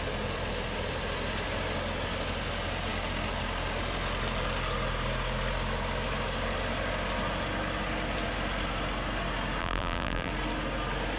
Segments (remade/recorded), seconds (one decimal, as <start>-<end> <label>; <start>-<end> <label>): 0.0-9.6 recorded; 9.6-10.3 remade; 10.3-11.2 recorded